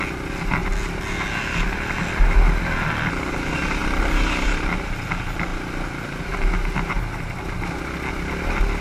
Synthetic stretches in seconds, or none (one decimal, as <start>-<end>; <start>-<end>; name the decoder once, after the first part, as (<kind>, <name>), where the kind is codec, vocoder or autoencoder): none